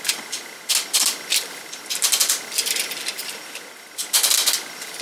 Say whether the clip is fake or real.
real